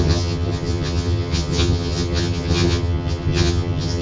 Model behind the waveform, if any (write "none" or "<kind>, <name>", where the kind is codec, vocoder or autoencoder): vocoder, HiFi-GAN